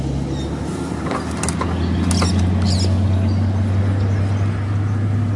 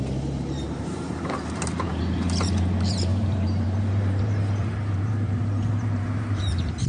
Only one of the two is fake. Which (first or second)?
second